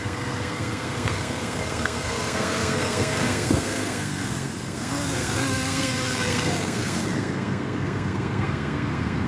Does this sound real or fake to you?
fake